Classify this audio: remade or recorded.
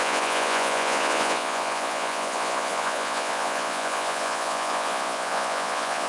remade